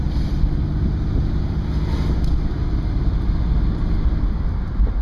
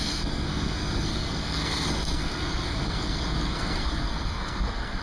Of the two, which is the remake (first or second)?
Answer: second